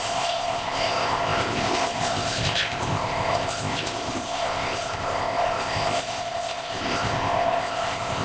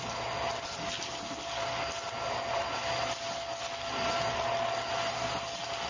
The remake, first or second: first